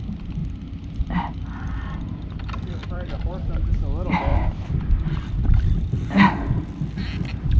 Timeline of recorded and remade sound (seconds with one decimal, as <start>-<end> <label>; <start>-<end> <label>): 0.0-0.4 recorded; 0.4-1.1 remade; 1.1-2.8 recorded; 2.8-3.3 remade; 3.3-4.3 recorded; 4.3-5.4 remade; 5.4-7.6 recorded